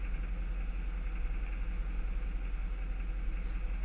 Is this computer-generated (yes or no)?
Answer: no